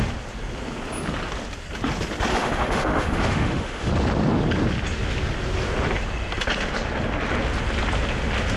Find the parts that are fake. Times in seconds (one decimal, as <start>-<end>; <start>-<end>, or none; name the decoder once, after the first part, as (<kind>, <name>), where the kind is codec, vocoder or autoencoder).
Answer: 2.3-3.9 (autoencoder, DAC-VAE)